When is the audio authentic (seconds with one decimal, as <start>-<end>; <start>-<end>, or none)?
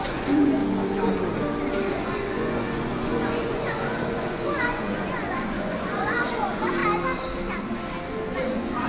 0.6-1.9; 6.8-8.3